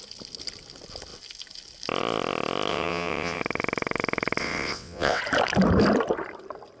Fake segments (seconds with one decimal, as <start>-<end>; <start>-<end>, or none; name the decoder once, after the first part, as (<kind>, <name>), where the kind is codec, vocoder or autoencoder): 2.7-3.4 (vocoder, WaveNeXt); 4.4-5.2

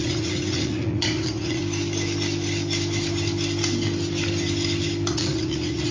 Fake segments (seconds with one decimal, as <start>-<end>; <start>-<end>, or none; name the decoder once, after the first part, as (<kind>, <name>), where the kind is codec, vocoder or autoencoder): 0.0-1.6 (vocoder, WaveNeXt); 5.1-5.9

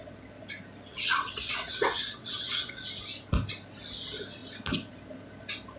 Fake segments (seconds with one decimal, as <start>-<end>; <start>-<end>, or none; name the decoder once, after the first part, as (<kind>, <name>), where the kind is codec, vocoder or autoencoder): 0.9-2.8 (vocoder, WaveNeXt)